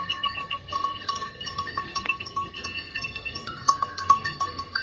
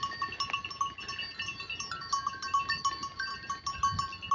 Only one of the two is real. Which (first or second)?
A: second